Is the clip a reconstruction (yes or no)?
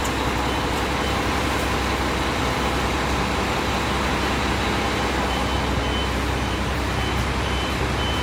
no